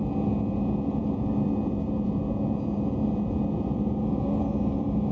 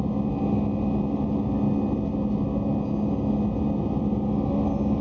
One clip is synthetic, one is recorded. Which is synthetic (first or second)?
first